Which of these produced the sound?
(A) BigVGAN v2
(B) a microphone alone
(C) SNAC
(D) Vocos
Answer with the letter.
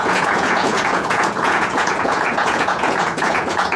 D